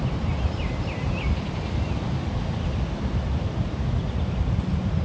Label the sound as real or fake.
real